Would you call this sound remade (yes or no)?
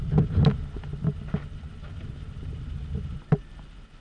no